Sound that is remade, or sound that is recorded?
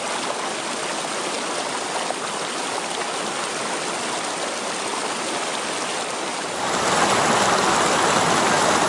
recorded